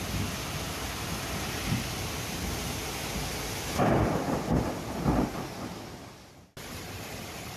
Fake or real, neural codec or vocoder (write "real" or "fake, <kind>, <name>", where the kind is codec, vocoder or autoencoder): real